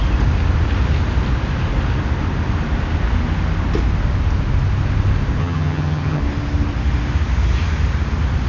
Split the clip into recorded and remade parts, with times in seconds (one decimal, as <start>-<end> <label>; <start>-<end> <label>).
0.0-5.4 recorded; 5.4-6.2 remade; 6.2-8.5 recorded

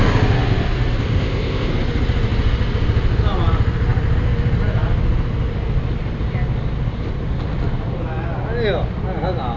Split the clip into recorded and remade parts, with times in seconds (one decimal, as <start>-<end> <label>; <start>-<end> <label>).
0.0-1.0 recorded; 1.0-1.7 remade; 1.7-9.6 recorded

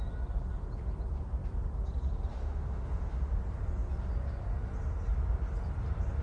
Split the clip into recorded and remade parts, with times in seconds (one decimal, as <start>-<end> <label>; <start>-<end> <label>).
0.0-2.3 recorded; 2.3-3.3 remade; 3.3-6.2 recorded

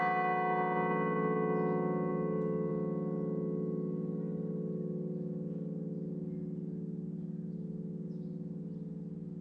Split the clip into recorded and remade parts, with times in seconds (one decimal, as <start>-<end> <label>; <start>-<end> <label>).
0.0-9.4 recorded

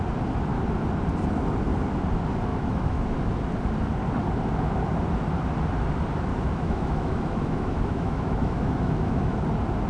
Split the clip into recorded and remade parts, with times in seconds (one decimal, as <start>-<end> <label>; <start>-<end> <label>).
0.0-2.5 recorded; 2.5-3.3 remade; 3.3-6.3 recorded; 6.3-9.4 remade; 9.4-9.9 recorded